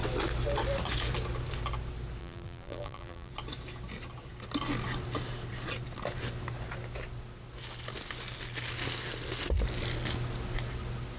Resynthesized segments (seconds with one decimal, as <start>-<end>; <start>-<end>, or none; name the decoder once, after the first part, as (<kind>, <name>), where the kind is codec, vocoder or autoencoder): 2.2-3.3 (vocoder, BigVGAN v2)